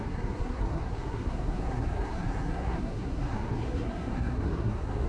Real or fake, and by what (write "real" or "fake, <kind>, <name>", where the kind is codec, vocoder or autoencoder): fake, codec, SNAC